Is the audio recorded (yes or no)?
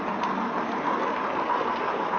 yes